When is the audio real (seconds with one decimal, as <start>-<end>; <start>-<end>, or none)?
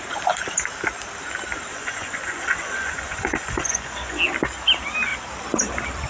0.0-1.7; 4.2-6.1